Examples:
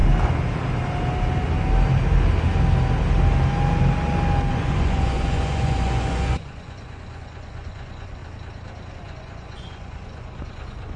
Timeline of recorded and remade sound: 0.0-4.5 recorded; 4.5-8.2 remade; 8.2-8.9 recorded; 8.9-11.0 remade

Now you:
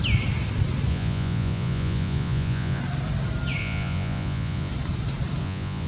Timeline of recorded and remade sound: 0.0-0.9 recorded; 0.9-2.8 remade; 2.8-3.6 recorded; 3.6-4.7 remade; 4.7-5.4 recorded; 5.4-5.9 remade

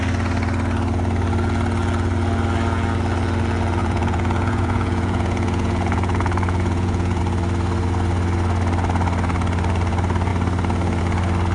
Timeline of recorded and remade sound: 0.0-3.8 recorded; 3.8-7.2 remade; 7.2-11.5 recorded

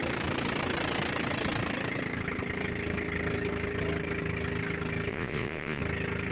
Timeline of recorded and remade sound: 0.0-5.1 recorded; 5.1-5.8 remade; 5.8-6.3 recorded

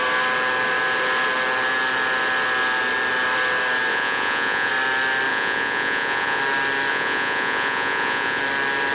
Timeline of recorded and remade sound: 0.0-3.9 recorded; 3.9-4.7 remade; 4.7-5.3 recorded; 5.3-6.4 remade; 6.4-6.9 recorded; 6.9-8.4 remade; 8.4-8.9 recorded

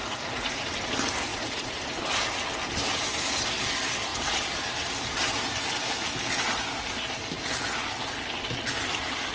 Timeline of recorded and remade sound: 0.0-0.7 remade; 0.7-1.3 recorded; 1.3-2.0 remade; 2.0-9.3 recorded